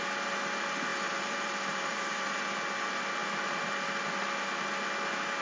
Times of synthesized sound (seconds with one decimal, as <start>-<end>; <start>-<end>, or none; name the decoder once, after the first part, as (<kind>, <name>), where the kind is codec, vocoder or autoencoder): 0.9-2.4 (vocoder, BigVGAN v2)